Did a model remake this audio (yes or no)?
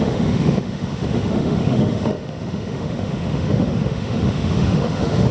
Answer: yes